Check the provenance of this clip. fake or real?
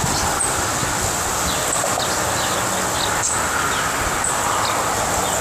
real